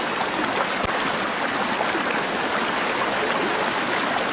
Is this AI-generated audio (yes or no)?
no